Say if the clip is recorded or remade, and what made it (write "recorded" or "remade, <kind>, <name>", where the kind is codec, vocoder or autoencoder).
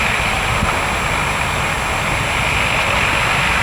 recorded